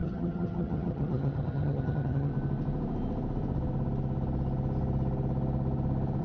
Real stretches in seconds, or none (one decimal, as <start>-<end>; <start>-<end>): 2.3-6.2